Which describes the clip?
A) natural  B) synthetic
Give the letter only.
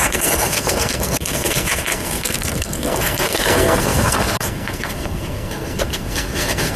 B